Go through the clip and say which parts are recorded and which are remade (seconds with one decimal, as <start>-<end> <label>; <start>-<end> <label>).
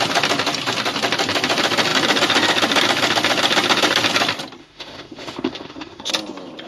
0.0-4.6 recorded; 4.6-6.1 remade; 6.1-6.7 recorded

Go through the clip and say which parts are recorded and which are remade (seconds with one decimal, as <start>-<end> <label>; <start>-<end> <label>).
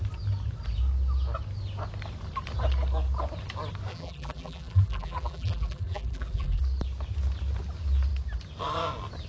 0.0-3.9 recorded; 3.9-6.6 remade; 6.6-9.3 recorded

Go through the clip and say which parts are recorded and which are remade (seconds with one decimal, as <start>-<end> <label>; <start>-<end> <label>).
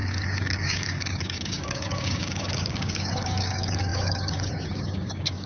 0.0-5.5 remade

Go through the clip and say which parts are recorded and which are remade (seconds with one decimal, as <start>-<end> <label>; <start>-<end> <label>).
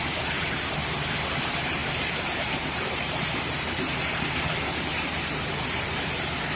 0.0-0.8 remade; 0.8-1.4 recorded; 1.4-6.6 remade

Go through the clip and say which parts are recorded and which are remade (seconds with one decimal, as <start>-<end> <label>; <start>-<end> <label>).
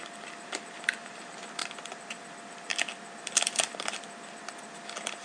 0.0-5.2 recorded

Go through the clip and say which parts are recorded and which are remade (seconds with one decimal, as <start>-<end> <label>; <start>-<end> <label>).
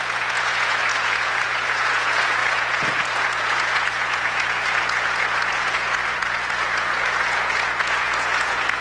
0.0-8.8 remade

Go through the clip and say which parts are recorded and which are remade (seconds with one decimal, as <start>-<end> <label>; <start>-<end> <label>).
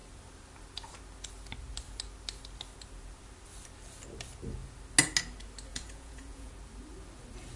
0.0-5.7 recorded; 5.7-6.5 remade; 6.5-7.6 recorded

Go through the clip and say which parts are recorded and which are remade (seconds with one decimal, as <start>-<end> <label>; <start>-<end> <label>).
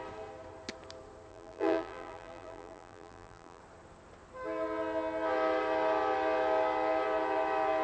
0.0-1.3 recorded; 1.3-3.6 remade; 3.6-7.8 recorded